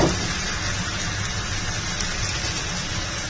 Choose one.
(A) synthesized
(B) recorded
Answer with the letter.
B